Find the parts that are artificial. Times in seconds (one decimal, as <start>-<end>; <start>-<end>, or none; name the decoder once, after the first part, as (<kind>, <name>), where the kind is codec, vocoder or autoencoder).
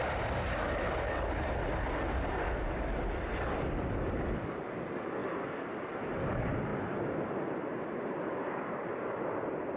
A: none